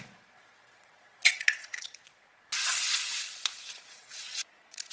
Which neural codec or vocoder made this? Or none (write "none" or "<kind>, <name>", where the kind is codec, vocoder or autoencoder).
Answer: vocoder, Vocos